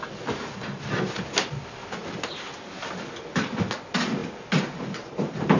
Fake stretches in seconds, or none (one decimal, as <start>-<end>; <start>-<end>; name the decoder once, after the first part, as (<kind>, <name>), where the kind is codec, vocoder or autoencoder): none